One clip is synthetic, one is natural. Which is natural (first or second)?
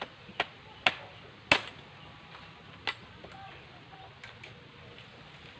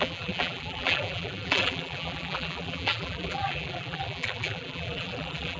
first